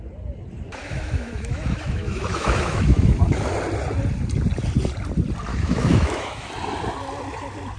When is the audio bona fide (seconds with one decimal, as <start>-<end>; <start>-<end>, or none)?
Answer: 0.0-0.8; 3.2-5.5; 6.5-7.8